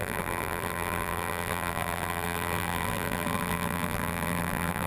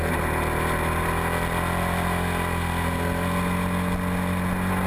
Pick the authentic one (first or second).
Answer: second